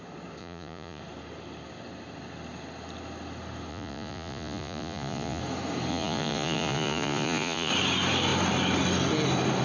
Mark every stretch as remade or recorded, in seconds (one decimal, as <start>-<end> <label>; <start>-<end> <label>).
0.0-0.4 recorded; 0.4-1.0 remade; 1.0-3.7 recorded; 3.7-5.4 remade; 5.4-5.9 recorded; 5.9-7.7 remade; 7.7-9.6 recorded